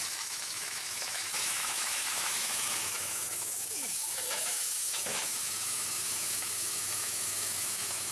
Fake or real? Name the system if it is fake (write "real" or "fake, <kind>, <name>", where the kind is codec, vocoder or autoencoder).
fake, autoencoder, DAC-VAE